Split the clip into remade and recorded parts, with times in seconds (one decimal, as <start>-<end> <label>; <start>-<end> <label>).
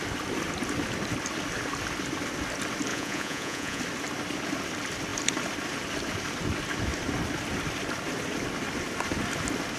0.0-2.9 recorded; 2.9-3.8 remade; 3.8-9.8 recorded